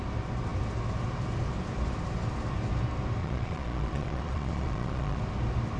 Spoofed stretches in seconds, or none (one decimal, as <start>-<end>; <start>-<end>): 3.2-5.2